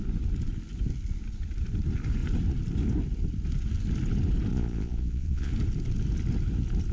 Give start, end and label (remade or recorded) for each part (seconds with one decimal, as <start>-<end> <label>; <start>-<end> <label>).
0.0-4.5 recorded; 4.5-5.5 remade; 5.5-6.9 recorded